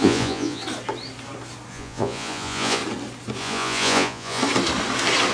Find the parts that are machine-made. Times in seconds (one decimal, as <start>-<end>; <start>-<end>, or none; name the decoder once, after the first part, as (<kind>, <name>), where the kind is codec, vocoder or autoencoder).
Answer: 0.0-0.6 (vocoder, Vocos); 1.7-2.8; 3.4-4.4